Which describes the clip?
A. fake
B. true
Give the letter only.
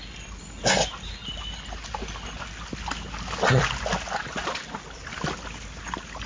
B